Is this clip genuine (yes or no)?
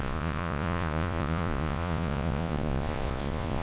no